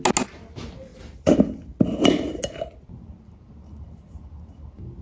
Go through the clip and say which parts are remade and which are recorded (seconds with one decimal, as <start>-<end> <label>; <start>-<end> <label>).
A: 0.0-5.0 recorded